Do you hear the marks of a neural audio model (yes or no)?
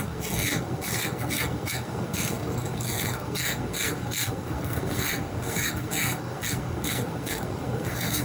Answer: yes